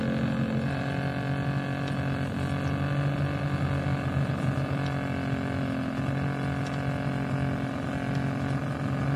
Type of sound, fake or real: real